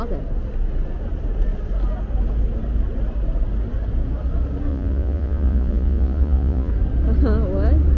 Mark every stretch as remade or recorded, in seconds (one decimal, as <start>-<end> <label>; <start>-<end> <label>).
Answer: 0.0-4.7 recorded; 4.7-6.7 remade; 6.7-8.0 recorded